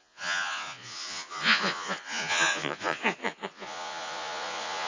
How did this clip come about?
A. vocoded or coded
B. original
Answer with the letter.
A